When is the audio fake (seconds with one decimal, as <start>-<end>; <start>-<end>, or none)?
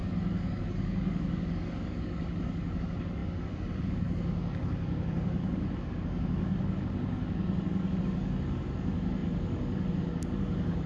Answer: 0.0-10.9